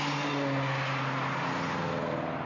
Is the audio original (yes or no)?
yes